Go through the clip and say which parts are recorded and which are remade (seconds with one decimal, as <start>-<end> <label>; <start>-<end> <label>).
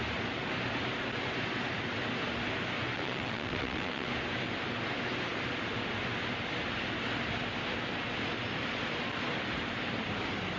0.0-2.9 recorded; 2.9-4.1 remade; 4.1-10.6 recorded